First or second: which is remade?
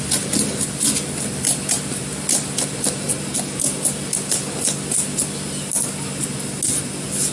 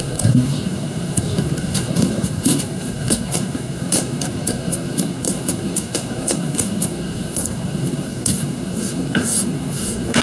second